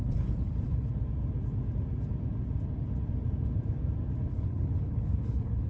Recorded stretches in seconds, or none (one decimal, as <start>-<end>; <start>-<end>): 0.9-4.3